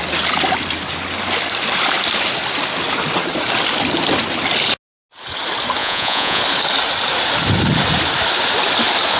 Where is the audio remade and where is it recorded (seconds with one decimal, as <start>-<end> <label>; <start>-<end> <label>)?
0.0-5.8 recorded; 5.8-6.4 remade; 6.4-9.2 recorded

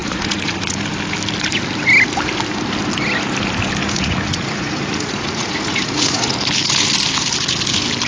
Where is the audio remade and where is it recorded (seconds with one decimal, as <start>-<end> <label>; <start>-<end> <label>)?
0.0-0.8 remade; 0.8-3.8 recorded; 3.8-6.3 remade; 6.3-8.1 recorded

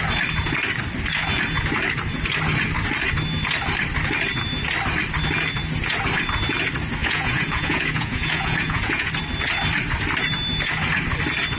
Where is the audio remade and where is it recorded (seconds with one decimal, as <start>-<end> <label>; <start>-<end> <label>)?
0.0-7.0 recorded; 7.0-9.1 remade; 9.1-11.6 recorded

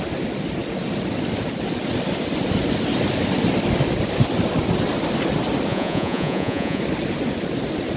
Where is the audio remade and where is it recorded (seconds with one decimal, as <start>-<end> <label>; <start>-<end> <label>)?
0.0-5.7 recorded; 5.7-6.8 remade; 6.8-8.0 recorded

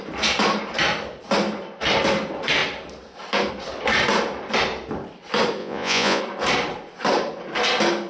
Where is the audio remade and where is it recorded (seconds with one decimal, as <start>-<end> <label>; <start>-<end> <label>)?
0.0-5.6 recorded; 5.6-6.2 remade; 6.2-8.1 recorded